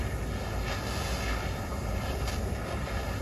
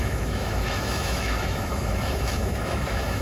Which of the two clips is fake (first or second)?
second